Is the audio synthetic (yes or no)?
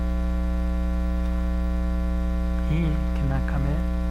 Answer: no